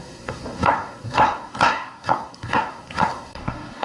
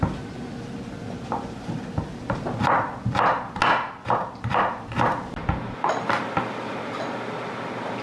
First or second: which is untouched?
second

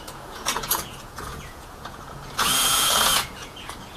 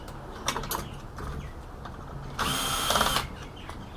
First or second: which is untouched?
second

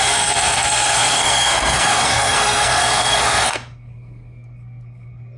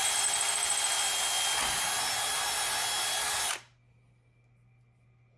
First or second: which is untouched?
second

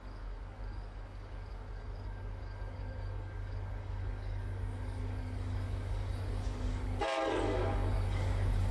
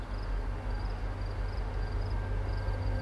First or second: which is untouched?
second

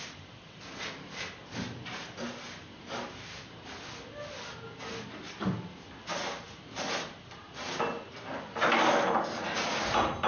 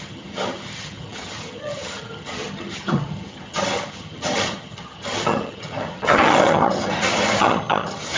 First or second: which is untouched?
first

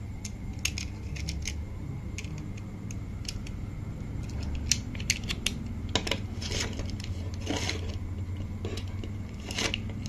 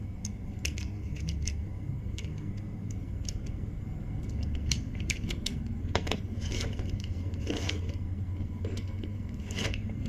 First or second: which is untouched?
first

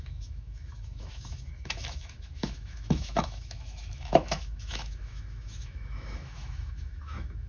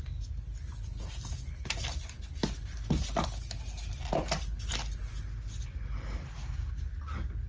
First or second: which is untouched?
second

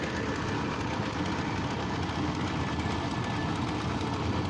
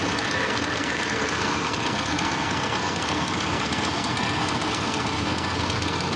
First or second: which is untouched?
first